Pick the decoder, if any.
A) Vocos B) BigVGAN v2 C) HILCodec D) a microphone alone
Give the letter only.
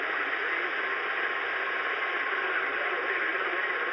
D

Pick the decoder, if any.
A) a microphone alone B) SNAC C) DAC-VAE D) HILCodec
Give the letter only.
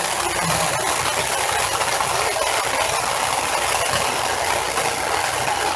A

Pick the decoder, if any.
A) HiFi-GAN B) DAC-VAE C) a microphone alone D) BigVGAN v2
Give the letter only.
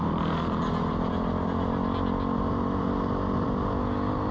C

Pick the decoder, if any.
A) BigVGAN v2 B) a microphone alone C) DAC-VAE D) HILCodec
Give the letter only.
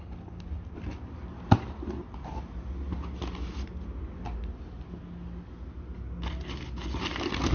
B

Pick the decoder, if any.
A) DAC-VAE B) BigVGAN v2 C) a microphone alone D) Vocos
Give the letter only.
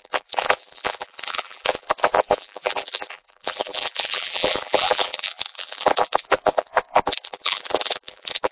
B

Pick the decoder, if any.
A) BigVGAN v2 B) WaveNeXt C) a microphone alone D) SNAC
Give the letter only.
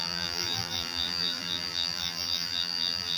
A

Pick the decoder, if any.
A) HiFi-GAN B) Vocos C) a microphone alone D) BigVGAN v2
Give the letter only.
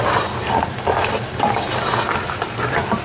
C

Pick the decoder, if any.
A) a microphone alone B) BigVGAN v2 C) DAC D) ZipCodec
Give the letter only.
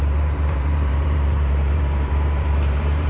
B